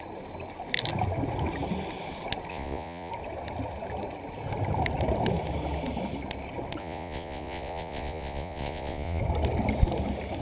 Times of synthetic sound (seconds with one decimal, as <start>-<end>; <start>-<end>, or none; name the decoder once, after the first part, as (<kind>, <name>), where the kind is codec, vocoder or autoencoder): 2.5-3.1 (vocoder, Vocos); 6.8-9.2